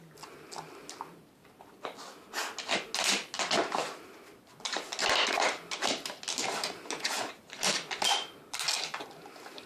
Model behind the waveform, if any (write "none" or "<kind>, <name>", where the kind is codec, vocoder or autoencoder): none